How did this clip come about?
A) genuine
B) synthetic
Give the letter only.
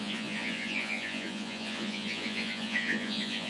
B